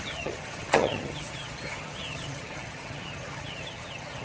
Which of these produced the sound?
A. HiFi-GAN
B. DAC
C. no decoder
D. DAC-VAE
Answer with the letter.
A